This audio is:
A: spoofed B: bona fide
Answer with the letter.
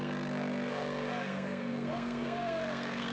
A